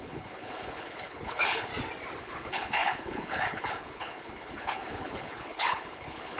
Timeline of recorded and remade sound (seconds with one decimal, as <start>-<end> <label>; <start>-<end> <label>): 0.0-1.7 remade; 1.7-2.2 recorded; 2.2-6.4 remade